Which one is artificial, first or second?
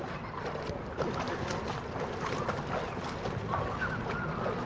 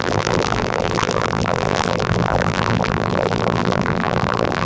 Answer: second